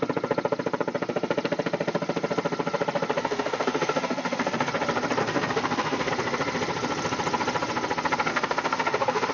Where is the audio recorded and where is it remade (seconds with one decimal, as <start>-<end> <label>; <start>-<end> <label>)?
0.0-3.2 recorded; 3.2-4.7 remade; 4.7-5.2 recorded; 5.2-6.1 remade; 6.1-8.3 recorded; 8.3-9.3 remade